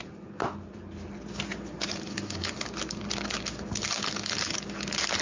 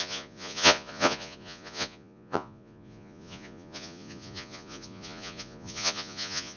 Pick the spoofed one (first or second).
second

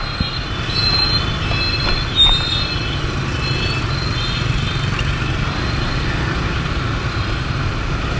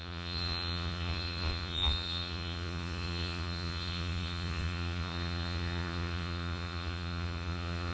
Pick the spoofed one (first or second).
second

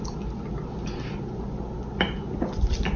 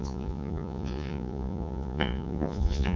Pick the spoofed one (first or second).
second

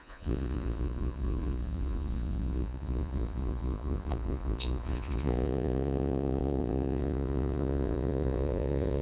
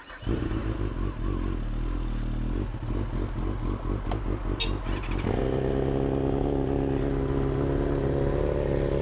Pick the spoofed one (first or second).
first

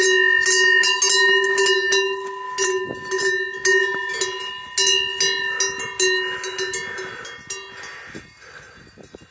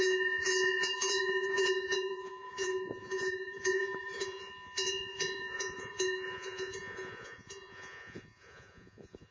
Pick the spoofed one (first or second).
second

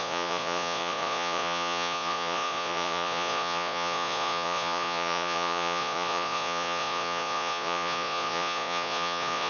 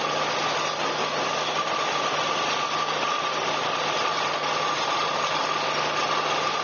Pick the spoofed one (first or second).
first